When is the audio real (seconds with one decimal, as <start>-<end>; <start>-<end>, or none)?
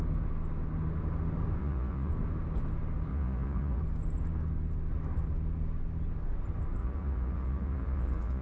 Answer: 0.0-1.6; 2.1-3.1; 3.8-6.8